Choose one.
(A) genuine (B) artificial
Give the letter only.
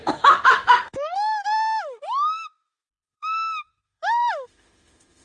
B